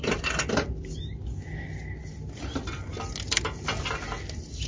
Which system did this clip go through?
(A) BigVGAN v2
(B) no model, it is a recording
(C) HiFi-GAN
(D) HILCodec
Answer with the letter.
B